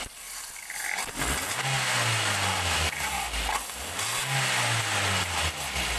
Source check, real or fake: real